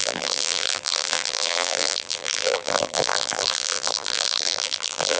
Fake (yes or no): yes